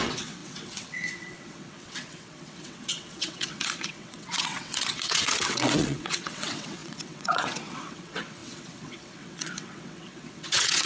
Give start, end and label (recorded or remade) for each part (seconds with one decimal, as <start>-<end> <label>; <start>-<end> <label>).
0.0-10.9 remade